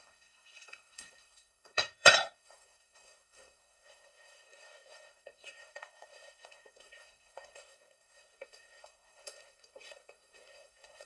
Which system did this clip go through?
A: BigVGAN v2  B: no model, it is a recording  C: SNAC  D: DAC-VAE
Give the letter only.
C